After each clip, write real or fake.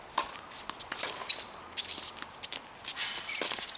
real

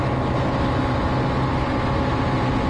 real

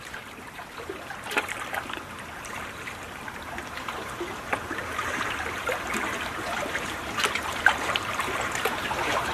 fake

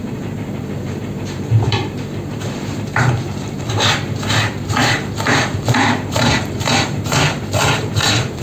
fake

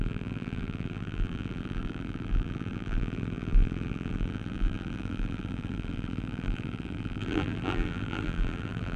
fake